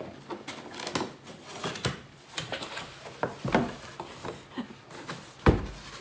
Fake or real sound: real